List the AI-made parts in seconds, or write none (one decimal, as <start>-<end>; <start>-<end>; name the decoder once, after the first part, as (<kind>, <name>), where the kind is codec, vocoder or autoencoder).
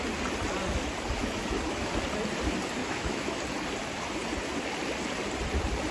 1.2-1.9 (autoencoder, DAC-VAE); 2.8-3.4